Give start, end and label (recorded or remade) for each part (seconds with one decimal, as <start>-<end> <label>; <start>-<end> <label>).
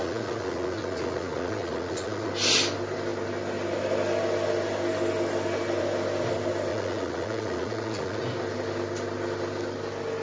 0.0-2.3 remade; 2.3-6.7 recorded; 6.7-8.2 remade; 8.2-10.2 recorded